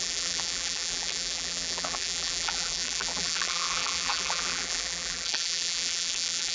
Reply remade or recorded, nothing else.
remade